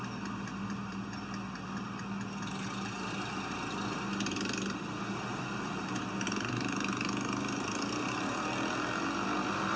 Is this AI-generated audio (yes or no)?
no